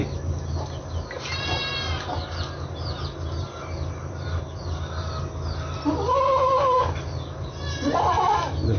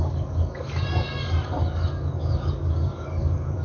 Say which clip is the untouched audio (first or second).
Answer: first